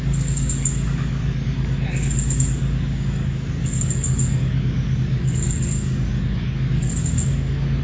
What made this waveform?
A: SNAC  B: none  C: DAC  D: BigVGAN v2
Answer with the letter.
C